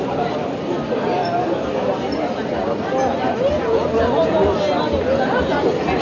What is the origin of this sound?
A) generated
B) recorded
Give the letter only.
B